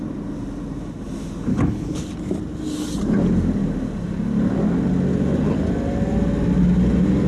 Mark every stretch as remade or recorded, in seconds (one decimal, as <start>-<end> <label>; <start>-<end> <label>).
0.0-1.5 recorded; 1.5-2.1 remade; 2.1-7.3 recorded